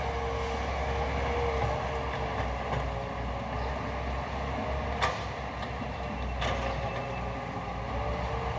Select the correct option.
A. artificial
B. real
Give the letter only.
B